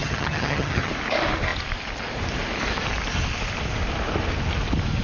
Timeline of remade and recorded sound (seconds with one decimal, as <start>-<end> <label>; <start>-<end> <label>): 0.0-0.9 remade; 0.9-5.0 recorded

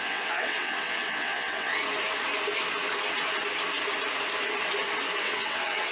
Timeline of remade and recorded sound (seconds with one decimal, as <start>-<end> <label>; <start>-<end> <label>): 0.0-1.7 remade; 1.7-5.2 recorded; 5.2-5.9 remade

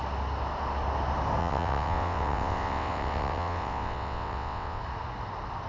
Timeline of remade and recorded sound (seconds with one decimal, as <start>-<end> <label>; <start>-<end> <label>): 0.0-1.4 recorded; 1.4-4.8 remade; 4.8-5.7 recorded

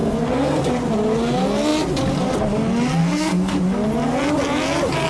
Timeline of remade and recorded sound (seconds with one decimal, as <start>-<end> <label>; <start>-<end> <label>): 0.0-0.6 remade; 0.6-3.0 recorded; 3.0-3.6 remade; 3.6-5.1 recorded

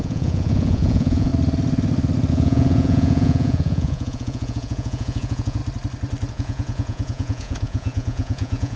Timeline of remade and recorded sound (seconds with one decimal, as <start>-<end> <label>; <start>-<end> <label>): 0.0-1.3 remade; 1.3-2.3 recorded; 2.3-5.6 remade; 5.6-6.3 recorded; 6.3-8.8 remade

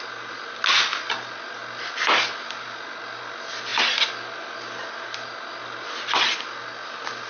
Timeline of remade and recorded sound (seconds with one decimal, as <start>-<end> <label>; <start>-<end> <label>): 0.0-7.3 recorded

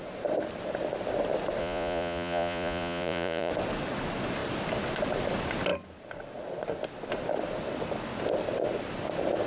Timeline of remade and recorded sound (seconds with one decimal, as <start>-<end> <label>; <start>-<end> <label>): 0.0-1.6 recorded; 1.6-3.5 remade; 3.5-9.5 recorded